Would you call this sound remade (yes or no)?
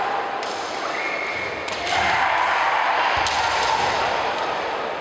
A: no